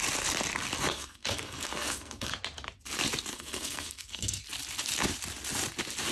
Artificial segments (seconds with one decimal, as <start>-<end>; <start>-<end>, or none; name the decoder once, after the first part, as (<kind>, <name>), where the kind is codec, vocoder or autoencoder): 0.9-2.3 (codec, SNAC); 3.3-4.4